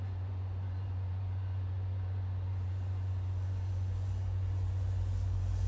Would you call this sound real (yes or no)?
no